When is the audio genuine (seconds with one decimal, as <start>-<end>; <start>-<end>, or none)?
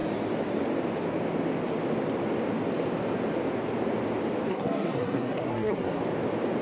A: 0.0-4.5; 6.0-6.6